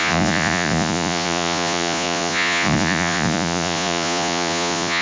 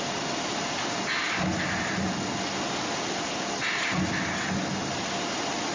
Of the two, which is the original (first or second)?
second